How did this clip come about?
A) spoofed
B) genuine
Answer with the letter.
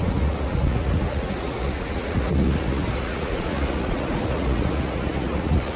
A